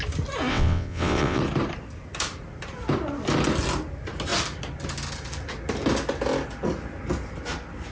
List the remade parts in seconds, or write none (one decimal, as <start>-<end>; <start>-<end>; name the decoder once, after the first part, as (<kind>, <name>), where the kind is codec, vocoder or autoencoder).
0.5-1.4 (vocoder, WaveNeXt)